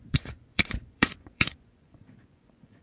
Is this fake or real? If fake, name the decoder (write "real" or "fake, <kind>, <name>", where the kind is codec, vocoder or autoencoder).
fake, vocoder, Vocos